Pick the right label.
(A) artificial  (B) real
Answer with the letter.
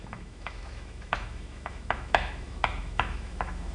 A